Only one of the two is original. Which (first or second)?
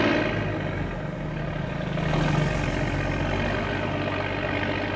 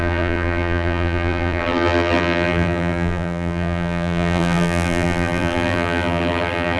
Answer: first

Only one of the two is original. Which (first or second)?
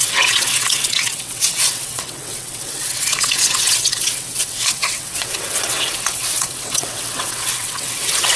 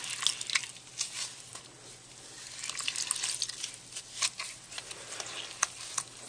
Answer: second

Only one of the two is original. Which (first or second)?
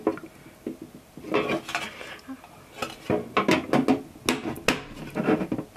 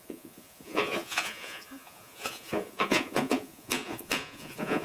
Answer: first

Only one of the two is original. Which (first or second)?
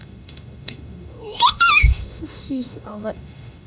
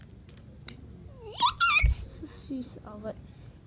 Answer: second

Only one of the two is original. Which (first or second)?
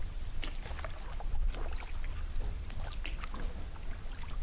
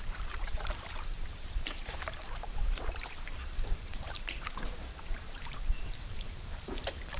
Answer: first